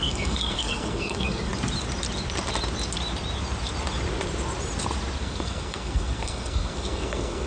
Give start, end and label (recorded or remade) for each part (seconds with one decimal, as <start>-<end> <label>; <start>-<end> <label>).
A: 0.0-1.5 remade; 1.5-5.2 recorded; 5.2-7.5 remade